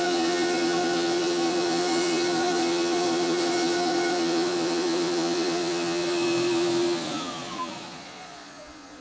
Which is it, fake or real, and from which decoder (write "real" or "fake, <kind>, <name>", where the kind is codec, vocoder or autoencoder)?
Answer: fake, vocoder, Vocos